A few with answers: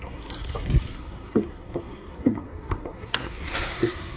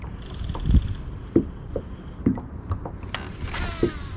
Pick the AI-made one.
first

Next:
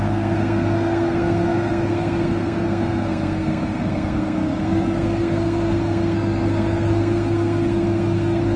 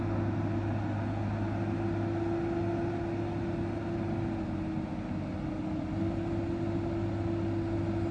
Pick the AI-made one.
first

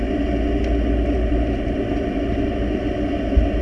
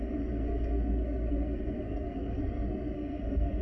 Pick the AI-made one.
second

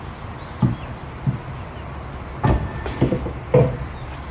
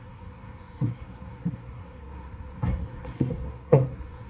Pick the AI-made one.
second